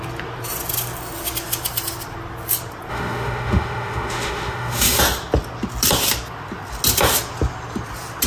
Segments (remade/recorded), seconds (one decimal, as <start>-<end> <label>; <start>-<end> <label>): 0.0-2.9 recorded; 2.9-5.0 remade; 5.0-8.3 recorded